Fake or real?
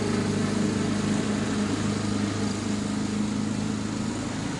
real